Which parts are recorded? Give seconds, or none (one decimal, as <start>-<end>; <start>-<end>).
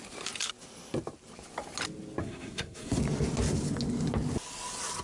0.0-2.2; 3.0-5.0